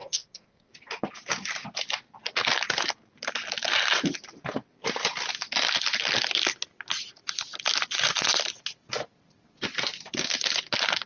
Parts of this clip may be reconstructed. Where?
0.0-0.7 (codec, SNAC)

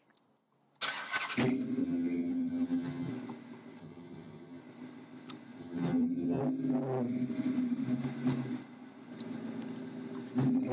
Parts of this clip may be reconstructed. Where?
1.8-3.1 (vocoder, HiFi-GAN); 3.8-4.6; 5.6-6.4

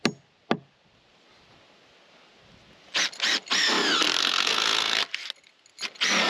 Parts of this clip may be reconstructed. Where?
4.2-5.0 (codec, SNAC)

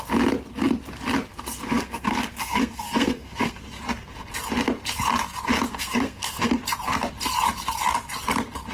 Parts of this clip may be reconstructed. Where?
1.3-3.6 (codec, SNAC); 5.7-6.6

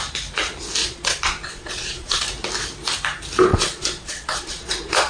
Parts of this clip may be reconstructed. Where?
0.8-2.2 (vocoder, Vocos); 3.5-5.1

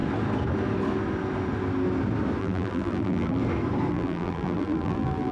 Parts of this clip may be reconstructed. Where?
2.4-3.4 (vocoder, BigVGAN v2); 3.9-5.3

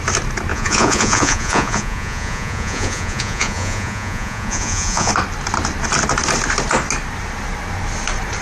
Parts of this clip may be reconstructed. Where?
0.5-5.1 (vocoder, Vocos)